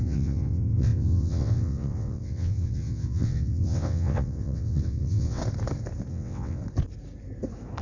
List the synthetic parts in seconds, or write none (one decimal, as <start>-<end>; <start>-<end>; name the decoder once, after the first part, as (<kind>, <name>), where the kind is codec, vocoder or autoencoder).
0.0-5.4 (vocoder, WaveNeXt); 6.1-6.6